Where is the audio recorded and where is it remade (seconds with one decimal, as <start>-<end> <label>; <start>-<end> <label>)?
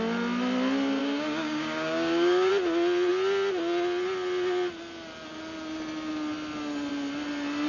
0.0-1.0 recorded; 1.0-2.5 remade; 2.5-7.7 recorded